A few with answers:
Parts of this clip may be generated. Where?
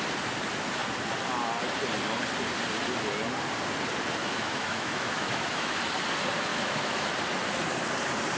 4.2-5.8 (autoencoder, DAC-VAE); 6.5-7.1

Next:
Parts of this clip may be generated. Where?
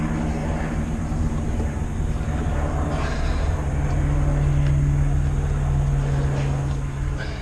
0.4-3.9 (vocoder, BigVGAN v2)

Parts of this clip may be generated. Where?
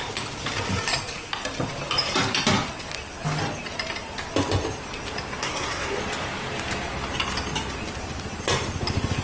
5.4-6.0 (codec, SNAC)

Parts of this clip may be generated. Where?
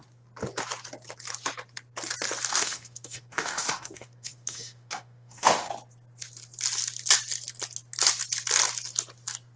2.5-5.7 (autoencoder, DAC-VAE)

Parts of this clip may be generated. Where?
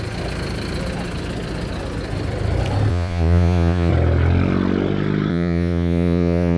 2.9-3.9 (vocoder, Vocos); 5.3-6.6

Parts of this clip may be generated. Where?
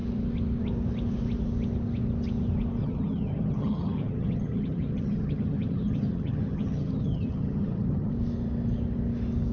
2.8-8.1 (vocoder, HiFi-GAN)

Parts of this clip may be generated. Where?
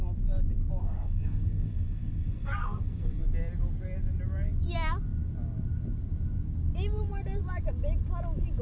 0.8-3.2 (codec, SNAC)